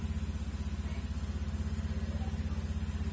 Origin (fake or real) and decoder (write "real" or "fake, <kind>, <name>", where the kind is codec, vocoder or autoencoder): real